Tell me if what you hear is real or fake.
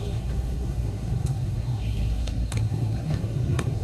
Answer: fake